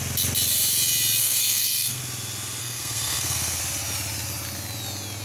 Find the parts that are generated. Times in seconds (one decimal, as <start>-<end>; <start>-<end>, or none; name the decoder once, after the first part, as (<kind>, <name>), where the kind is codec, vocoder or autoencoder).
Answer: 1.2-2.0 (codec, SNAC); 2.6-3.6